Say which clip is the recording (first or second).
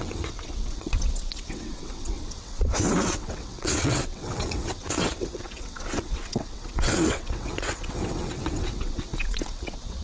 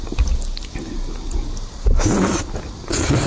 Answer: second